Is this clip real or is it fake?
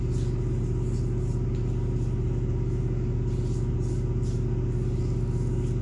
real